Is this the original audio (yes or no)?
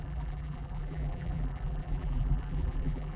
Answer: no